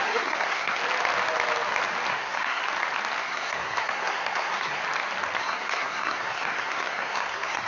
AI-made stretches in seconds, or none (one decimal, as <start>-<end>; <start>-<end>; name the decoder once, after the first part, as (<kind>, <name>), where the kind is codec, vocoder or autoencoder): 0.0-0.8 (codec, SNAC); 2.1-2.6; 3.2-4.8; 5.4-7.7